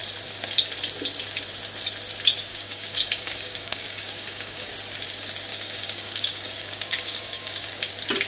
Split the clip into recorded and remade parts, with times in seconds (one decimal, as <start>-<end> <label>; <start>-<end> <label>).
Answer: 0.0-2.5 recorded; 2.5-4.7 remade; 4.7-5.5 recorded; 5.5-7.9 remade; 7.9-8.3 recorded